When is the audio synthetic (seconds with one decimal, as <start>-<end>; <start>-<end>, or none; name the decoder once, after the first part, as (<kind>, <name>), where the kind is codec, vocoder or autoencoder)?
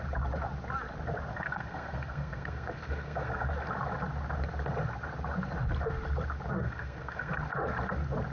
1.3-3.5 (codec, SNAC); 6.6-7.3